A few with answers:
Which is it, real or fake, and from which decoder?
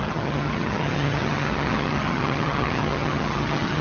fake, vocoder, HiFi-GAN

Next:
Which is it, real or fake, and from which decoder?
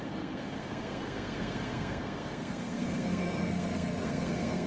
fake, codec, SNAC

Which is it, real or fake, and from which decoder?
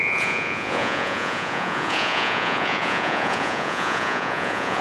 fake, vocoder, Vocos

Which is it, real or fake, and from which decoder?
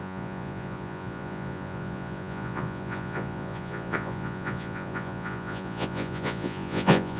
fake, vocoder, Vocos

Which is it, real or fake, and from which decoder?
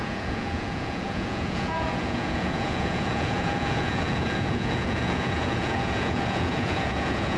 fake, vocoder, Vocos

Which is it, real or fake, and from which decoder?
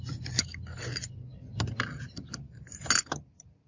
real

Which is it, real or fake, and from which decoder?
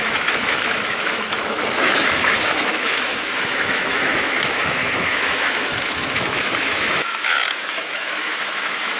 fake, autoencoder, DAC-VAE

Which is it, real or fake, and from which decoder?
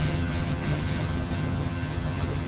fake, vocoder, HiFi-GAN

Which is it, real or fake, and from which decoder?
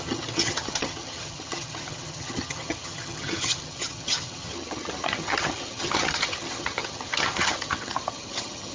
fake, vocoder, HiFi-GAN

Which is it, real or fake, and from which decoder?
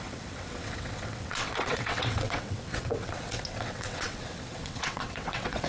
fake, vocoder, WaveNeXt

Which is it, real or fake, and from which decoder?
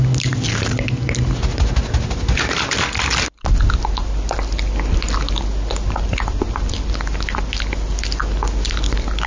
real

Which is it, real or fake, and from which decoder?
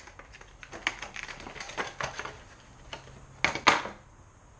real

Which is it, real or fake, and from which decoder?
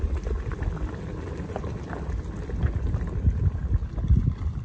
real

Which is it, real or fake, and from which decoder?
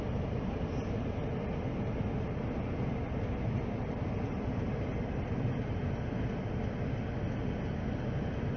real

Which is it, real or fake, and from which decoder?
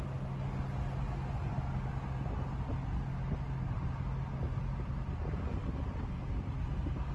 real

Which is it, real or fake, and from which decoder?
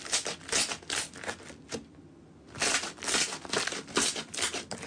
real